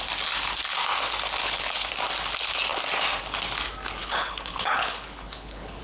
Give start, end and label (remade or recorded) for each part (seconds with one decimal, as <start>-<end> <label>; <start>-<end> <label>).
0.0-1.4 recorded; 1.4-1.9 remade; 1.9-4.0 recorded; 4.0-5.8 remade